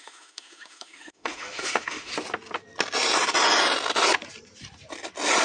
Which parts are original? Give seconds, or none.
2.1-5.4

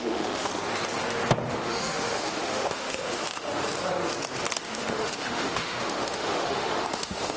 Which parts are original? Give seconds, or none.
0.5-1.5; 3.5-4.6

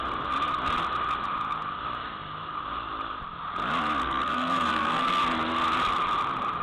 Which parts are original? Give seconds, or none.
0.0-4.0; 5.2-6.6

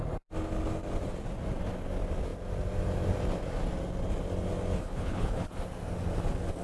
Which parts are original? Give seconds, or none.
0.0-4.8; 5.6-6.6

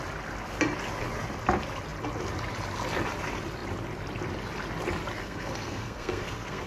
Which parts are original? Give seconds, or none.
0.0-5.2

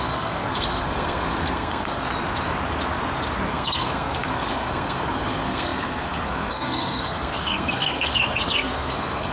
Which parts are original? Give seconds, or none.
2.1-3.5

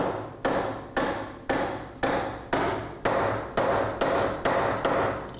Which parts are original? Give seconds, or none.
0.0-5.4